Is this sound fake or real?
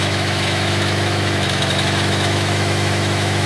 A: fake